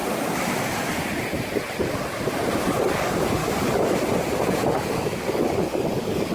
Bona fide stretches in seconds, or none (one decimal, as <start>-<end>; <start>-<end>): 0.0-2.9; 3.4-4.9